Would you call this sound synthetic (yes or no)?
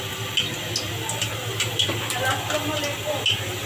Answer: no